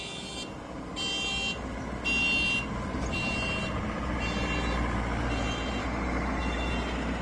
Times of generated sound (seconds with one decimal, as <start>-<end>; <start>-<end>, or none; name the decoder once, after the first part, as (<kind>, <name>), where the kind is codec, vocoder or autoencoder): 5.8-6.7 (autoencoder, DAC-VAE)